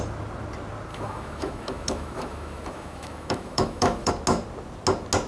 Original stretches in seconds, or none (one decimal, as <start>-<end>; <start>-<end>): 0.0-0.9; 4.1-5.3